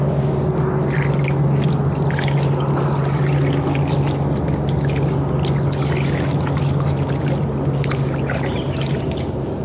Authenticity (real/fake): real